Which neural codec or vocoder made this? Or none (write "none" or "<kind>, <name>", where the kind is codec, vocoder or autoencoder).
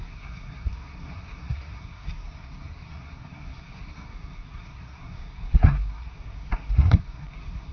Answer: codec, SNAC